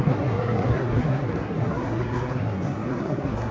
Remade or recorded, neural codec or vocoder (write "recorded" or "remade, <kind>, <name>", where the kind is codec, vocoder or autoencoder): remade, codec, SNAC